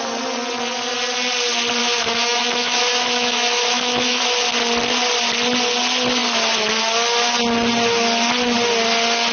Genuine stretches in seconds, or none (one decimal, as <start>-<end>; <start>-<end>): 0.0-1.8; 4.2-9.3